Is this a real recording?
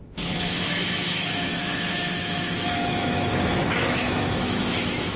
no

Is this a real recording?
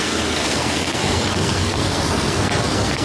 no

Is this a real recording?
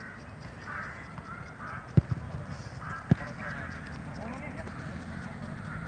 yes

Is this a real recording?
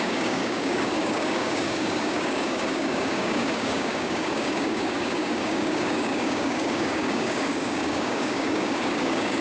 no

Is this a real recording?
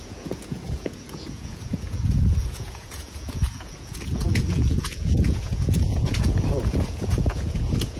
no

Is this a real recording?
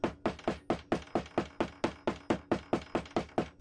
yes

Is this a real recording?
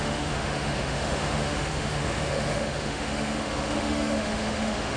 no